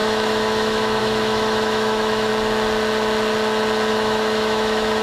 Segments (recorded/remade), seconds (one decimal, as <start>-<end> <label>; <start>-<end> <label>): 0.0-2.3 remade; 2.3-3.9 recorded; 3.9-5.0 remade